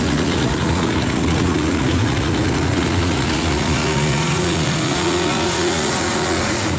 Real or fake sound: fake